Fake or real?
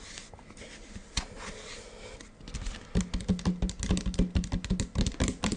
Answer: real